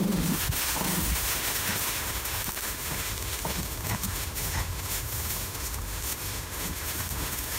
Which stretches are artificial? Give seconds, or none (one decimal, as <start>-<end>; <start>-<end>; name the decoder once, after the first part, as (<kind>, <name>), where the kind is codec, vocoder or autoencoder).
0.0-7.6 (autoencoder, DAC-VAE)